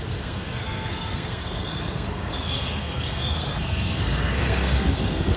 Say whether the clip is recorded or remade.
remade